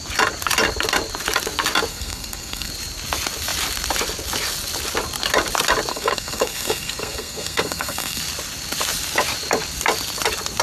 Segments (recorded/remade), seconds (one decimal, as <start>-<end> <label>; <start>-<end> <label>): 0.0-1.9 recorded; 1.9-2.7 remade; 2.7-5.9 recorded; 5.9-8.2 remade; 8.2-10.6 recorded